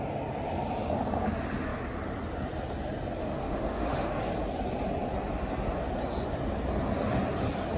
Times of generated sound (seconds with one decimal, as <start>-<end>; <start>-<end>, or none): 3.2-4.1